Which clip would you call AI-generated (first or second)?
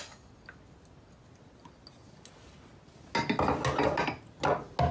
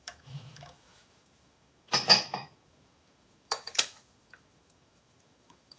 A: second